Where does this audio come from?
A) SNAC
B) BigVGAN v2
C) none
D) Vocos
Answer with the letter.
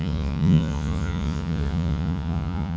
D